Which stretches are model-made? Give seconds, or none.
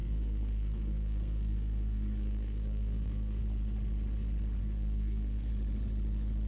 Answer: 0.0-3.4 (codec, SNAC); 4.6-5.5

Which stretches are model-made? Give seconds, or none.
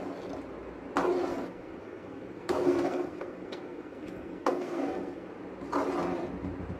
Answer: 1.3-5.3 (codec, SNAC)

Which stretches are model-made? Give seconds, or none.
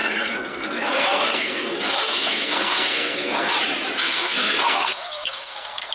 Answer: 0.0-3.5 (codec, SNAC); 4.0-5.9